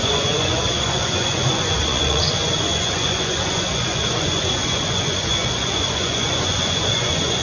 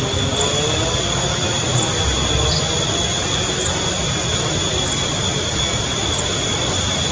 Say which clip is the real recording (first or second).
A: second